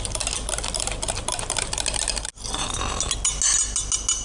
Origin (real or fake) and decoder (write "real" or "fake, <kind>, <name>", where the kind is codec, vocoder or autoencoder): real